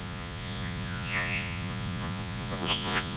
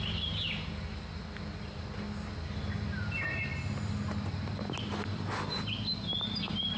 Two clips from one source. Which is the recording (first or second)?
second